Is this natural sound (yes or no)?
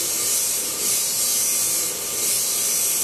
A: yes